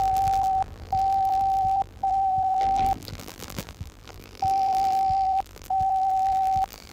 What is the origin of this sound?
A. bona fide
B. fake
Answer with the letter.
B